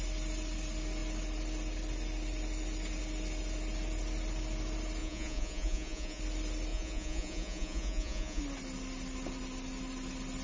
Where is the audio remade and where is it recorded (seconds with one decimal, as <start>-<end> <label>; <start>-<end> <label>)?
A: 0.0-5.0 recorded; 5.0-6.2 remade; 6.2-6.7 recorded; 6.7-8.4 remade; 8.4-10.4 recorded